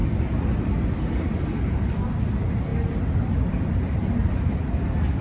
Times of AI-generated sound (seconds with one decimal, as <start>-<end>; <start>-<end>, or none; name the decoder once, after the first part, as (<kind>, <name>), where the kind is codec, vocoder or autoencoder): none